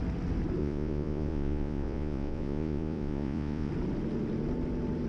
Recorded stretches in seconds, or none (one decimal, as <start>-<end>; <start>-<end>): 0.0-0.6; 3.7-5.1